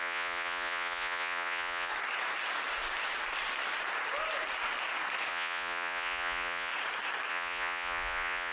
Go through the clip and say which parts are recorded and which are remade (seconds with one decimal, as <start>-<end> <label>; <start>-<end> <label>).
0.0-1.9 remade; 1.9-5.3 recorded; 5.3-6.7 remade; 6.7-7.3 recorded; 7.3-8.5 remade